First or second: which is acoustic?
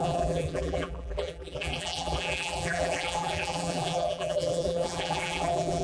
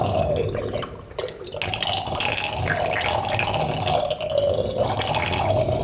second